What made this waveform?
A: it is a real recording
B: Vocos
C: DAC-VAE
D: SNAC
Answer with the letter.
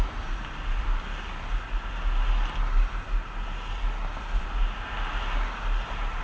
A